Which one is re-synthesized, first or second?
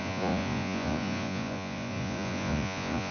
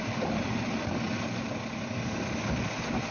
first